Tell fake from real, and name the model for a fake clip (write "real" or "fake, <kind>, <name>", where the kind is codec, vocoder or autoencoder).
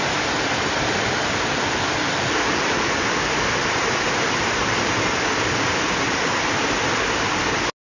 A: real